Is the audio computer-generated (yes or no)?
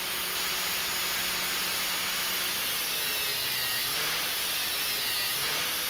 no